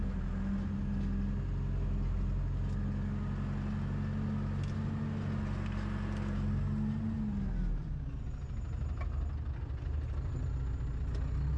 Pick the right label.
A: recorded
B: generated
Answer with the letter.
A